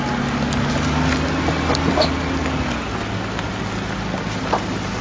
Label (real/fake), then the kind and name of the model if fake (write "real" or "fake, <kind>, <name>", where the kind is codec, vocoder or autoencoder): real